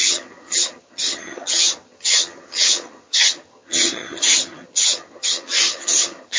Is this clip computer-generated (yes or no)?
yes